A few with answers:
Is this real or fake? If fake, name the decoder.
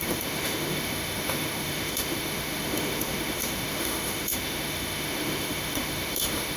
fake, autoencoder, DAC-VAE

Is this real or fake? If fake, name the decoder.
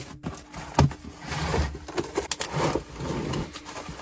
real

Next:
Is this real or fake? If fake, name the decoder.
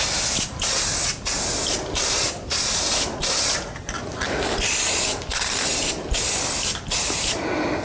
real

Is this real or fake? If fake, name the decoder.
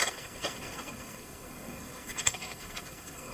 fake, codec, SNAC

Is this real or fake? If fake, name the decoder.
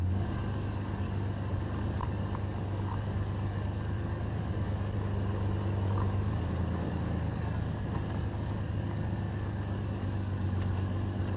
fake, codec, DAC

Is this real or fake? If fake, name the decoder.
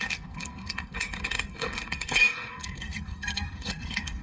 fake, codec, SNAC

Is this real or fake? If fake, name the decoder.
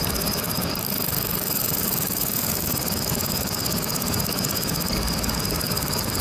fake, codec, DAC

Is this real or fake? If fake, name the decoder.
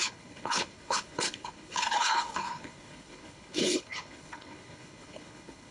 fake, codec, HILCodec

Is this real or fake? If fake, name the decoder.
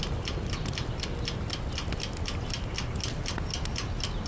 real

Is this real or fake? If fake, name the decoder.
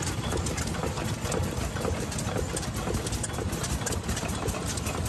real